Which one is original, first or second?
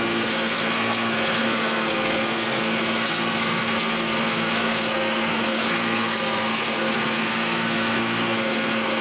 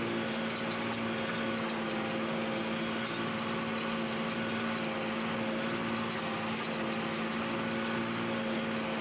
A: second